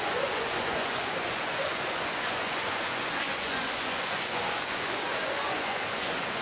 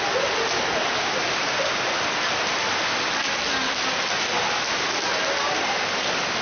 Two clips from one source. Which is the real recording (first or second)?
second